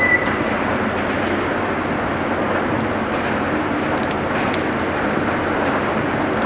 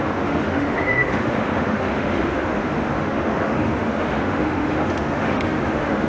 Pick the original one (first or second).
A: first